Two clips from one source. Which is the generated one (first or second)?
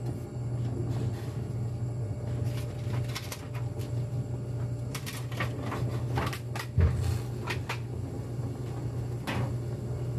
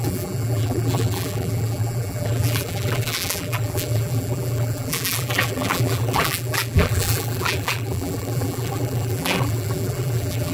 second